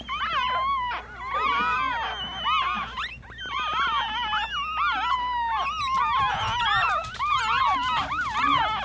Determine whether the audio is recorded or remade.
recorded